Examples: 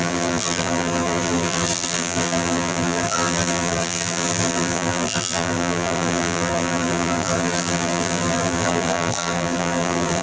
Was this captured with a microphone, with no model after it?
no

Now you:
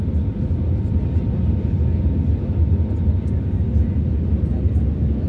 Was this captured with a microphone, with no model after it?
yes